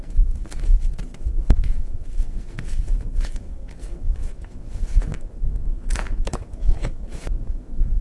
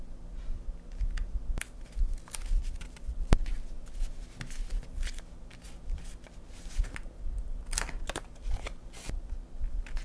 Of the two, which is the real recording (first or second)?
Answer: second